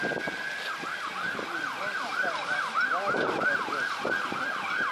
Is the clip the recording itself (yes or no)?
yes